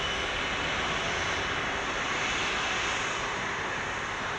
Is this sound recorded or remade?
recorded